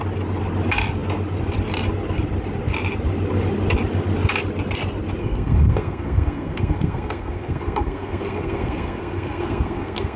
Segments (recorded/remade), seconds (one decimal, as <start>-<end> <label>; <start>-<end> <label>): 0.0-5.2 recorded; 5.2-10.2 remade